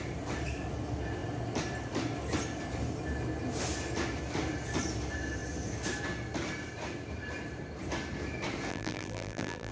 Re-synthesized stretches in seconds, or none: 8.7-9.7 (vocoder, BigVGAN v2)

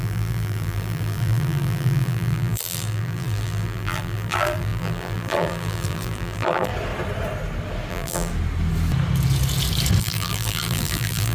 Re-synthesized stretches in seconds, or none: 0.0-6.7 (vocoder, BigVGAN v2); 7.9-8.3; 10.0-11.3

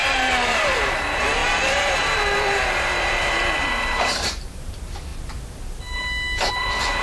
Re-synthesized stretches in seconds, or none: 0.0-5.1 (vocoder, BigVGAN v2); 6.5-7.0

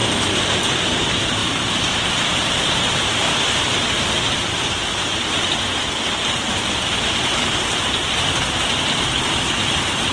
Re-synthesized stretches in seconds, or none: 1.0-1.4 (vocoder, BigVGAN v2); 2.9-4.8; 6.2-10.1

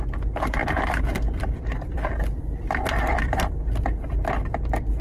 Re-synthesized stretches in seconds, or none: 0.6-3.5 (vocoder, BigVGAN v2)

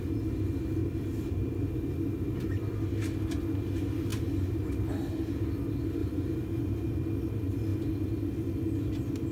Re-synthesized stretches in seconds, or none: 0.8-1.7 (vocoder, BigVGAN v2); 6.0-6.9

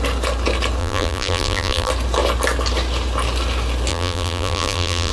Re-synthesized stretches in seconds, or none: 0.8-1.9 (vocoder, BigVGAN v2); 3.9-5.1